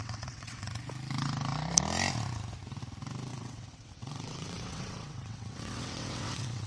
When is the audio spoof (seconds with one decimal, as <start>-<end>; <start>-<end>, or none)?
0.0-0.7; 3.3-6.7

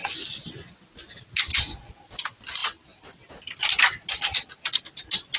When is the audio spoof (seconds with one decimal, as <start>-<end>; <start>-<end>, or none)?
none

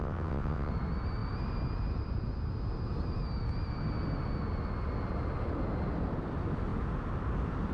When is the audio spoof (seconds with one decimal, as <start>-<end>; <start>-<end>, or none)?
0.0-0.7

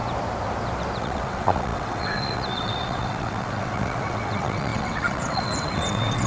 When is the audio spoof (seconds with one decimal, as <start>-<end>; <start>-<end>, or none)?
1.0-6.3